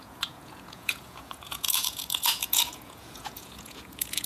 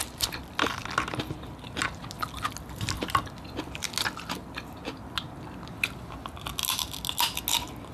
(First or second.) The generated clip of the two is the first